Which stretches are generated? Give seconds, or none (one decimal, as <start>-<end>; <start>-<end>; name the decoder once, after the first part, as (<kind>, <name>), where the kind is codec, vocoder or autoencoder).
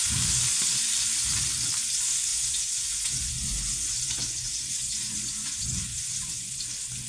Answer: 2.3-6.6 (vocoder, Vocos)